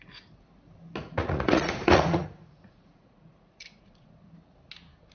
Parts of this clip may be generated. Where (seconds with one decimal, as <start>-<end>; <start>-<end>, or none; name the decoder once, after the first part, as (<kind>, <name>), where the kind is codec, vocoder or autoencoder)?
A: 1.0-4.1 (vocoder, Vocos)